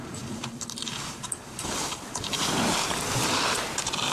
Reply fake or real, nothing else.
fake